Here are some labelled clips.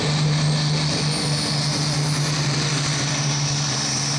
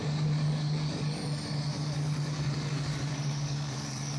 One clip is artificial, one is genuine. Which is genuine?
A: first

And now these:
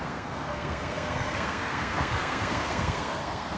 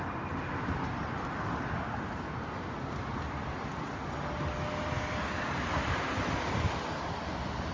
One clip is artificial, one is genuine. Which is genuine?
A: second